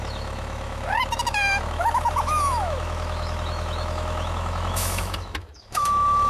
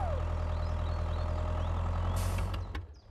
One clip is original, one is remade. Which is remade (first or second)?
first